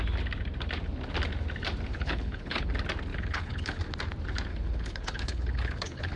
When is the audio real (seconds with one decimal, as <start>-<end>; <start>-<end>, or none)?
0.0-1.9; 2.7-3.1; 3.8-4.5

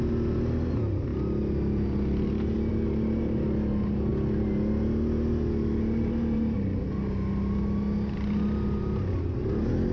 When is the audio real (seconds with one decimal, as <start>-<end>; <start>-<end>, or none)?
0.0-9.9

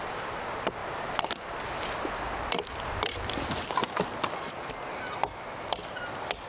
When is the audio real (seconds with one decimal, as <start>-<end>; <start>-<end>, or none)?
0.0-6.5

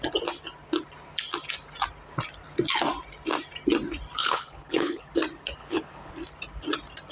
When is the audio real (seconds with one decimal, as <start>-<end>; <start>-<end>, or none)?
0.0-4.2; 5.1-5.6; 6.1-7.1

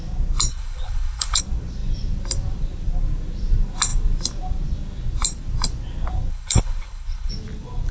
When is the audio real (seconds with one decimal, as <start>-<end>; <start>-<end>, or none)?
0.0-0.5; 1.4-6.3; 7.3-7.9

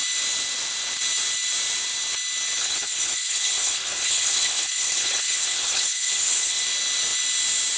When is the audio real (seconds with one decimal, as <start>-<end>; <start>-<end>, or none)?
0.0-2.6; 6.6-7.8

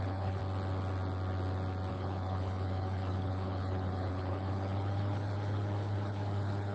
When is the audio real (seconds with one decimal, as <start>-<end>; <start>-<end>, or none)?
0.4-1.9